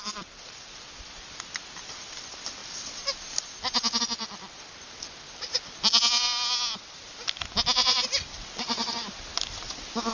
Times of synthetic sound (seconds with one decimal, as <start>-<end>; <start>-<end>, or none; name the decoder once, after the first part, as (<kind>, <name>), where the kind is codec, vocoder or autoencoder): 8.3-8.9 (vocoder, WaveNeXt)